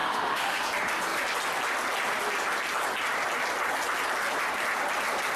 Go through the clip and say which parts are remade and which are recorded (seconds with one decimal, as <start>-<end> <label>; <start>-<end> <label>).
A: 0.0-0.6 remade; 0.6-5.4 recorded